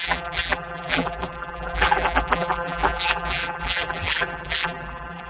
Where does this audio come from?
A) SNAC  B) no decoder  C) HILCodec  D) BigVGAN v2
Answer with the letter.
D